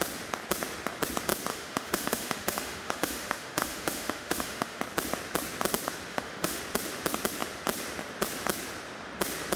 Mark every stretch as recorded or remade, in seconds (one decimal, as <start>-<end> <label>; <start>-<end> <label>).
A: 0.0-1.5 recorded; 1.5-4.8 remade; 4.8-6.1 recorded; 6.1-6.6 remade; 6.6-9.6 recorded